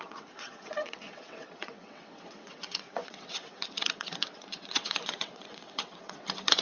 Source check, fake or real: fake